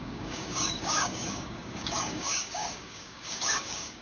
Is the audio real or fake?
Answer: fake